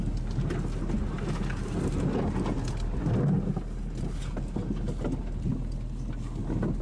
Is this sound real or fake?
real